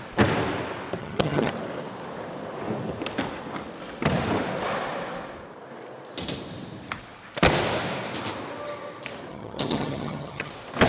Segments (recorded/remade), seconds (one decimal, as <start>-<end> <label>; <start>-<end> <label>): 0.0-1.0 recorded; 1.0-1.5 remade; 1.5-9.3 recorded; 9.3-10.5 remade; 10.5-10.9 recorded